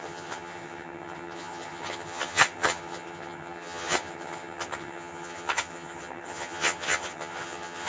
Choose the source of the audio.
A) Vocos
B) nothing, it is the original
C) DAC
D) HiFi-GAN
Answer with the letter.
D